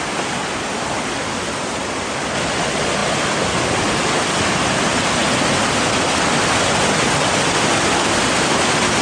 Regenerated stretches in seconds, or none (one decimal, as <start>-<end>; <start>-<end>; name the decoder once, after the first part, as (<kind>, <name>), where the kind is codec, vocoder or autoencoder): none